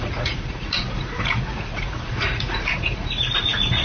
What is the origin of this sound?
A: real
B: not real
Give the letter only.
B